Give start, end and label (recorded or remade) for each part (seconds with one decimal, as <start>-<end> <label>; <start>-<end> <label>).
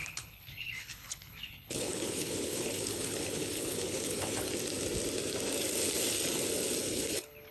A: 0.0-4.5 remade; 4.5-6.8 recorded; 6.8-7.5 remade